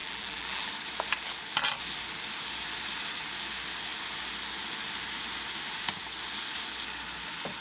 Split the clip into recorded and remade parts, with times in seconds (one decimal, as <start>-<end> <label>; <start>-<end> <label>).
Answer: 0.0-0.7 remade; 0.7-7.6 recorded